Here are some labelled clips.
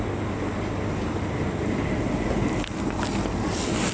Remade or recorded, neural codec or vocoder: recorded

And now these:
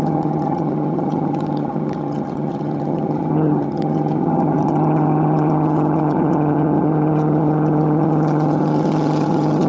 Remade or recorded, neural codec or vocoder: remade, vocoder, HiFi-GAN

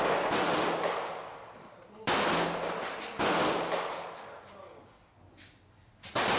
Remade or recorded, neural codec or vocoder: recorded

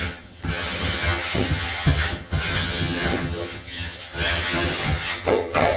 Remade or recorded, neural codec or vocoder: remade, vocoder, HiFi-GAN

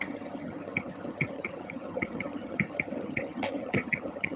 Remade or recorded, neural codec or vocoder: remade, vocoder, HiFi-GAN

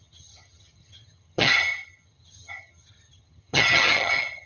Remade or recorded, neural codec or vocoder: remade, vocoder, HiFi-GAN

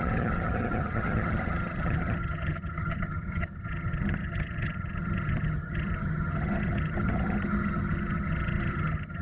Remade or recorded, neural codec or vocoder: remade, vocoder, HiFi-GAN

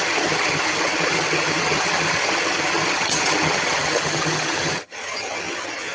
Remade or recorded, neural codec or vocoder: remade, vocoder, HiFi-GAN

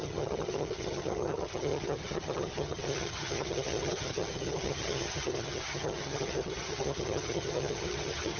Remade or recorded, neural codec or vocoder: remade, vocoder, HiFi-GAN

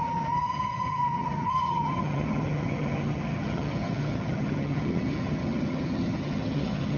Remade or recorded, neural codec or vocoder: remade, vocoder, HiFi-GAN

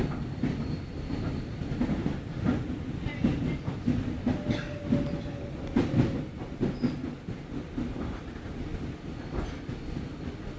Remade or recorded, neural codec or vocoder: recorded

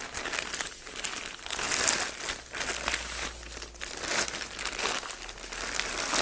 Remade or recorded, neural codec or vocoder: recorded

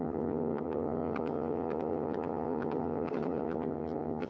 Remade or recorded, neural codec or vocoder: remade, vocoder, HiFi-GAN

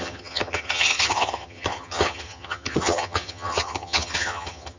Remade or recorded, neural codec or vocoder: remade, vocoder, HiFi-GAN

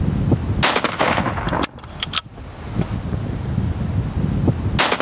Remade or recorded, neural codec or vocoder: recorded